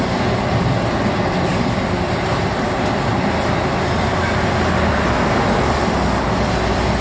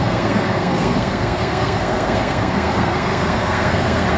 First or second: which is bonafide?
first